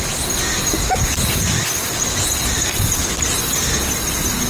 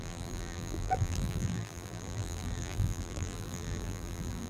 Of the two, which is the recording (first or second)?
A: first